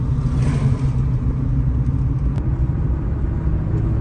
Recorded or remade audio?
recorded